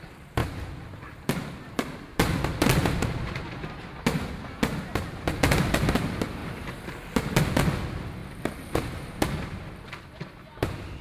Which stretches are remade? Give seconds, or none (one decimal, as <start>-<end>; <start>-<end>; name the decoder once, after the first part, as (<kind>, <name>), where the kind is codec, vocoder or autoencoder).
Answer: 2.8-3.8 (vocoder, BigVGAN v2); 8.2-9.6